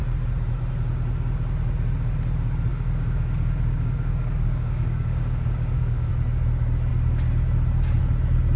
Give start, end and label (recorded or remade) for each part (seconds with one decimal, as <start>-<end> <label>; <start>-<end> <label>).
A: 0.0-2.7 recorded; 2.7-6.1 remade; 6.1-8.6 recorded